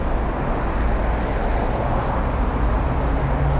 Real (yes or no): yes